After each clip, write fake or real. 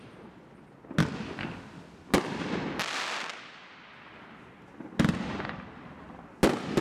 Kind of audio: real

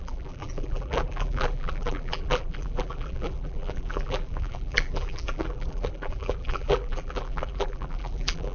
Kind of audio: fake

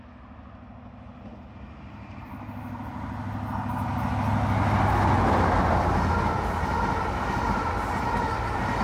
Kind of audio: real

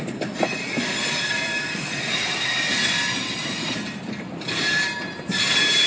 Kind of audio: fake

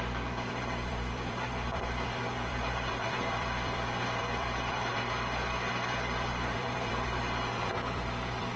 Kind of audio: fake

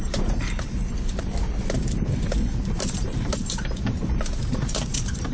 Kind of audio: fake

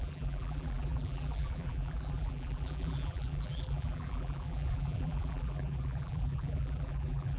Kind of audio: fake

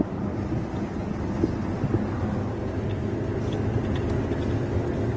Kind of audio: real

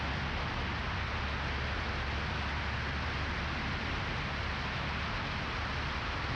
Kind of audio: real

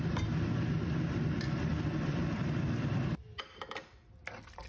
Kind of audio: real